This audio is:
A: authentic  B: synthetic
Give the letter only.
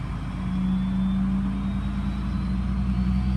A